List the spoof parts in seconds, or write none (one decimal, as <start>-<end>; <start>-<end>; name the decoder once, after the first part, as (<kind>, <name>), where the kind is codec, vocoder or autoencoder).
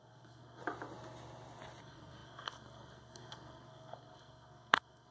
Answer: 0.0-0.6 (codec, SNAC); 1.8-5.1